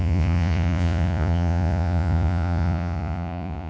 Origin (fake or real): fake